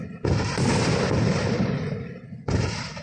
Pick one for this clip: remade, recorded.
remade